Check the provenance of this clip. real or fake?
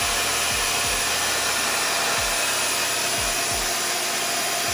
real